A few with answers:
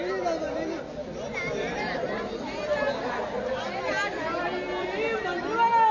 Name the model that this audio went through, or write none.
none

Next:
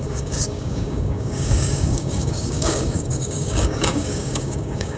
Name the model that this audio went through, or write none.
codec, DAC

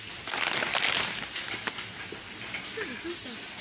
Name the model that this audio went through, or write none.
none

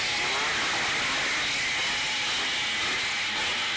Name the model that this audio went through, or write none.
none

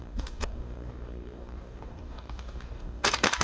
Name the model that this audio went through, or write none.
codec, DAC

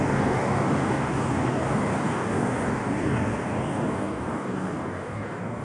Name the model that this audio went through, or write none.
codec, DAC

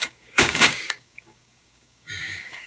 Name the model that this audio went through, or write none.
codec, DAC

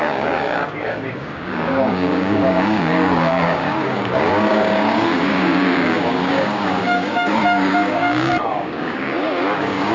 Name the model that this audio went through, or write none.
codec, DAC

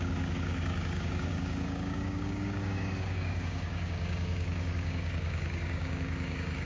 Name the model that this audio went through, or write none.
codec, DAC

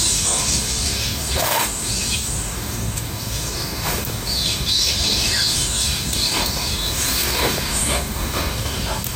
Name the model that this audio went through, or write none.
codec, DAC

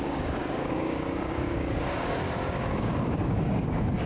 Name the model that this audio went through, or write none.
codec, DAC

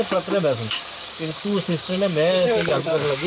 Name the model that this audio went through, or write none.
codec, DAC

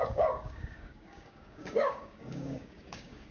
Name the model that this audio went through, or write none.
codec, DAC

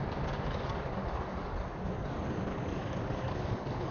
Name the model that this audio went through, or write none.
codec, DAC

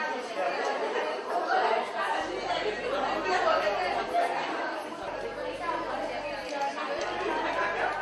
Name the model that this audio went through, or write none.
none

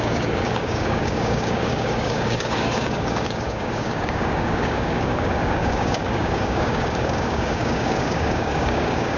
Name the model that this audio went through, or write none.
codec, DAC